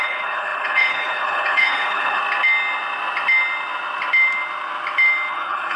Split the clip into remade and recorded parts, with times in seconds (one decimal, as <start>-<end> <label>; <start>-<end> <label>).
0.0-2.2 remade; 2.2-5.3 recorded; 5.3-5.8 remade